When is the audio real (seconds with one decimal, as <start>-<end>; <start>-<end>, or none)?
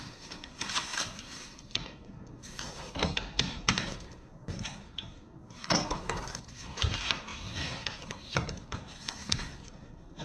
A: none